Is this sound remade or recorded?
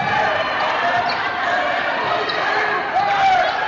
recorded